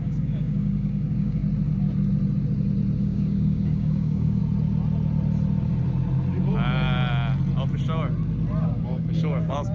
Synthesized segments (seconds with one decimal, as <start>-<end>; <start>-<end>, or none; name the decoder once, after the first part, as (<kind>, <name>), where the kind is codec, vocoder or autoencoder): 0.0-1.4 (codec, DAC); 3.0-4.4; 8.6-9.7

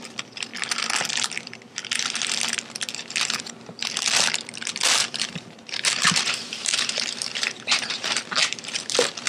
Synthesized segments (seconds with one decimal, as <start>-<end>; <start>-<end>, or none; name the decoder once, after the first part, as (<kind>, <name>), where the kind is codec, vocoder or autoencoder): 5.0-8.9 (vocoder, BigVGAN v2)

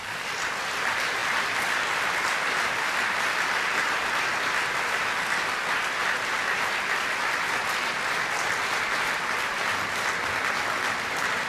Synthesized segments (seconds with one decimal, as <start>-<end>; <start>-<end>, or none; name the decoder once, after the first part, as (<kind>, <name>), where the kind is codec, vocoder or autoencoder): none

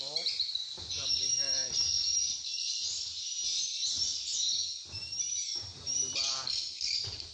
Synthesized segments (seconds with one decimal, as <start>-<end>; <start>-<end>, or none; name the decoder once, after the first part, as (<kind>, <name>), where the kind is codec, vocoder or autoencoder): 0.0-7.3 (vocoder, BigVGAN v2)

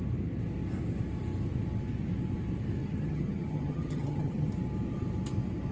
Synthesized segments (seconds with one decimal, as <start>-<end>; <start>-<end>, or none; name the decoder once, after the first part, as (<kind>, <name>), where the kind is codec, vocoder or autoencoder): 2.8-4.5 (vocoder, HiFi-GAN)

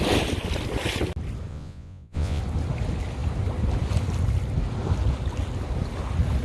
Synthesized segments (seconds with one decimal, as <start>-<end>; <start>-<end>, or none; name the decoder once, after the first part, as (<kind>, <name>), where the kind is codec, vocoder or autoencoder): 1.5-2.4 (vocoder, Vocos)

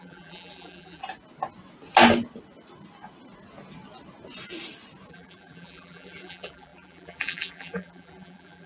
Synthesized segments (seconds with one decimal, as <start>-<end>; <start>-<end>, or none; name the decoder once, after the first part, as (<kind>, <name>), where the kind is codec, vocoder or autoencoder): 0.0-1.0 (vocoder, BigVGAN v2); 5.1-8.7

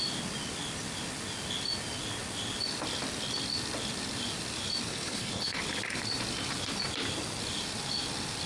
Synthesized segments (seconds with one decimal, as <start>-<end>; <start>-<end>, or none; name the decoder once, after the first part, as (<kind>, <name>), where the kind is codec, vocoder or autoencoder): 4.9-5.6 (codec, HILCodec)